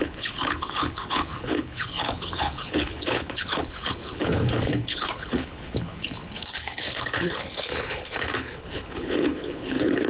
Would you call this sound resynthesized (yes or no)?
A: yes